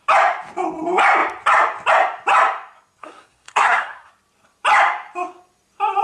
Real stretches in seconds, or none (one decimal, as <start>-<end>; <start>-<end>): 0.0-3.0; 4.1-6.0